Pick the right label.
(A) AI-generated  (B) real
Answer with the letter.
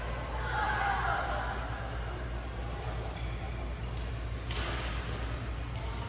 B